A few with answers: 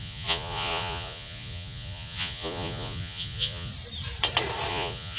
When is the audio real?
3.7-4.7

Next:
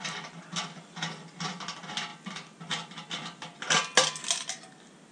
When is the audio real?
0.0-5.1